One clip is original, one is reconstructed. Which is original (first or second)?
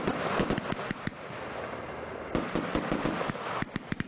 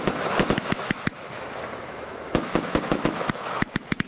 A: first